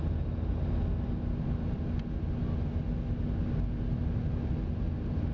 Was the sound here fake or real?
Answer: real